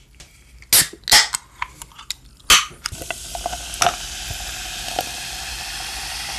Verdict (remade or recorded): recorded